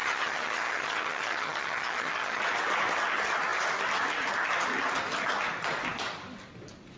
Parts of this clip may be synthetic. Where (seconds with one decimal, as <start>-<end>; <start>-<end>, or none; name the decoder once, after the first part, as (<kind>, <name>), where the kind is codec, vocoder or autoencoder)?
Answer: 0.0-2.4 (vocoder, HiFi-GAN)